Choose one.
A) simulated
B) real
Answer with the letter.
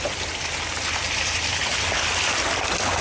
A